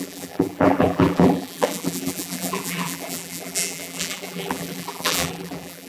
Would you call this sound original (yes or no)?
no